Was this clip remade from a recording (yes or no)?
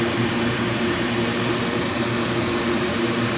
yes